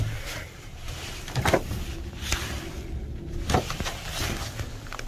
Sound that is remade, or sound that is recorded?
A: remade